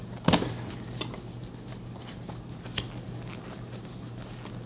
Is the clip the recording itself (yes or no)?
yes